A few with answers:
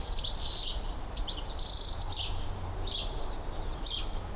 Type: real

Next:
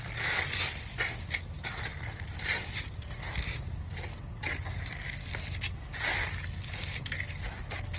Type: real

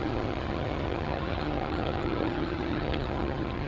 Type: fake